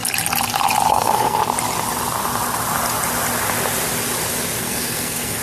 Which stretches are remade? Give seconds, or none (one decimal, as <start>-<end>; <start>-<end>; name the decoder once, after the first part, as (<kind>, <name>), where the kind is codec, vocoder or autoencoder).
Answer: 0.9-1.4 (codec, SNAC); 4.6-5.4